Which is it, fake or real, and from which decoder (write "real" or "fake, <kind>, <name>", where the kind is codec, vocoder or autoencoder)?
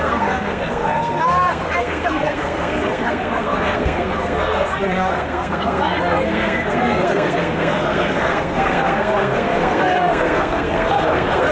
fake, codec, SNAC